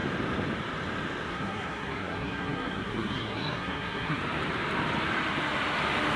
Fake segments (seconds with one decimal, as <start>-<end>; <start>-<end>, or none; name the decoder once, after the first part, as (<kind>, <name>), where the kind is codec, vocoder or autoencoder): 1.3-4.2 (codec, SNAC)